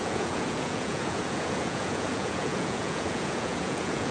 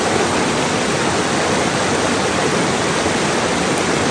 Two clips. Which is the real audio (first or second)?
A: second